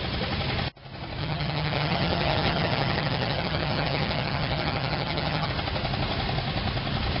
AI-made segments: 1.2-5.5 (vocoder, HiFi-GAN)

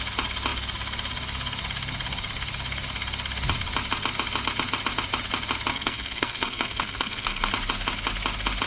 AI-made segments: 5.7-7.5 (codec, SNAC)

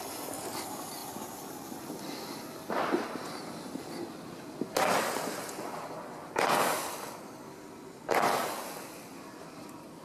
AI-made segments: none

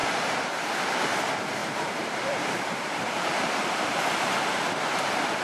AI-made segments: 0.0-0.5 (vocoder, BigVGAN v2); 1.6-4.3

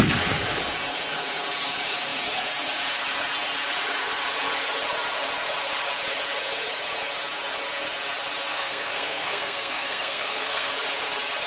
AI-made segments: 8.5-10.7 (codec, SNAC)

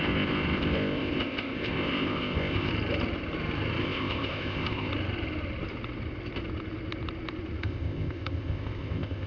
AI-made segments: 0.0-2.7 (codec, ZipCodec); 3.8-4.9; 7.6-9.3

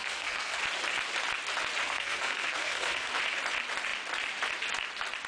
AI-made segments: 0.0-0.6 (codec, SNAC); 1.8-3.1

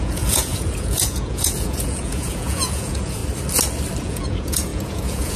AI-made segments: 0.0-3.2 (vocoder, Vocos); 4.0-5.4